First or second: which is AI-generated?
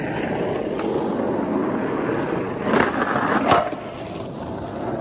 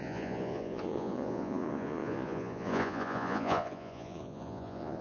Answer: second